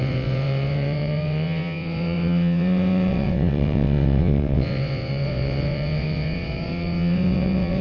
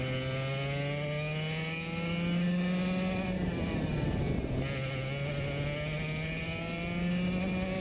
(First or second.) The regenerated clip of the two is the first